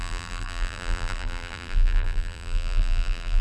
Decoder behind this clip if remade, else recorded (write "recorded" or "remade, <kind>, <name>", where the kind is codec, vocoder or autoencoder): remade, vocoder, BigVGAN v2